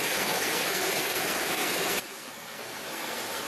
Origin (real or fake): fake